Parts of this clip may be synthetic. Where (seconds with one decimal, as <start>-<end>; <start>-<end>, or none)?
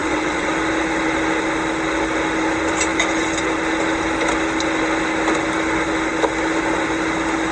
0.0-0.5